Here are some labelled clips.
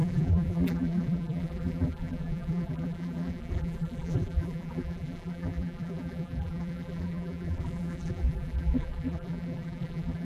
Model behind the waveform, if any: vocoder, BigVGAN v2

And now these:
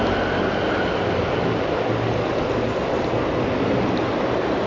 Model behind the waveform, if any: none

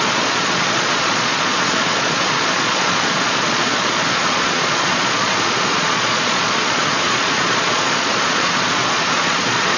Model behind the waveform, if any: vocoder, Vocos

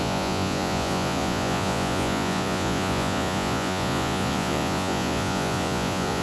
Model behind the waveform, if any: vocoder, Vocos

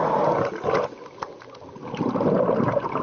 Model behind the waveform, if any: none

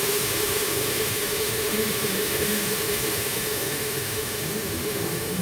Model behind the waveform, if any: autoencoder, DAC-VAE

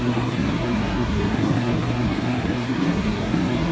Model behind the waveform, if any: codec, SNAC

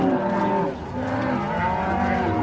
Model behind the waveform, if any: none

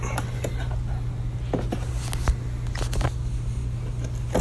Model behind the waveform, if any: none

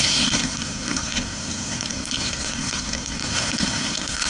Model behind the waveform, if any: codec, SNAC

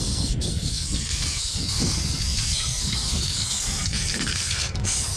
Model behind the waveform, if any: codec, SNAC